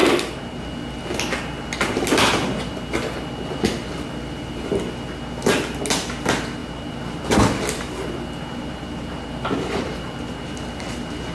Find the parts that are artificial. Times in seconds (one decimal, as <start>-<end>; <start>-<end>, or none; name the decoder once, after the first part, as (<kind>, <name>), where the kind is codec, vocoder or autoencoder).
0.0-0.6 (vocoder, BigVGAN v2)

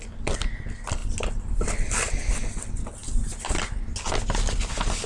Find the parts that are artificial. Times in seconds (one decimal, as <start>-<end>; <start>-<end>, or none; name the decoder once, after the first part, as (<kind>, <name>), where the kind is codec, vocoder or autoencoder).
none

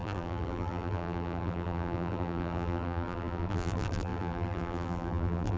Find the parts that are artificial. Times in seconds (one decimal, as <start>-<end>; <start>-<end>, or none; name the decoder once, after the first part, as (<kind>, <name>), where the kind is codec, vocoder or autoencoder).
0.0-5.6 (vocoder, BigVGAN v2)

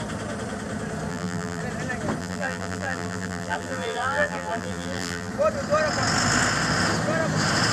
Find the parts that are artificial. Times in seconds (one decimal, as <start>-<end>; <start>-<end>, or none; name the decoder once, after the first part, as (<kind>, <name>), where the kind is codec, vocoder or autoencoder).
1.1-1.6 (vocoder, BigVGAN v2); 2.2-5.3

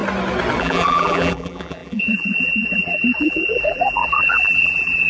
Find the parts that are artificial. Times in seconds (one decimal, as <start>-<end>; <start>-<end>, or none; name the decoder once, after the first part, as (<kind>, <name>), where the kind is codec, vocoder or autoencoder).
0.6-5.1 (vocoder, BigVGAN v2)

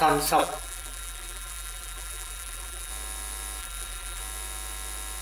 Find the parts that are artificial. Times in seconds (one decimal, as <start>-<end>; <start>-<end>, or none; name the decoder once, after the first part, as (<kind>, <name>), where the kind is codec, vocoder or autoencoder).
0.4-2.9 (vocoder, BigVGAN v2); 3.6-4.2

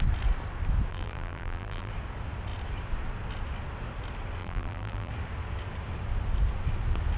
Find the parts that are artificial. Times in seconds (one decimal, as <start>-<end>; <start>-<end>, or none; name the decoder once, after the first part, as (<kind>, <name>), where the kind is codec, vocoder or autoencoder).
0.9-1.9 (vocoder, BigVGAN v2); 4.4-5.1